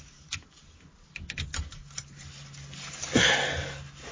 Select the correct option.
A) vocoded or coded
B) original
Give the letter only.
B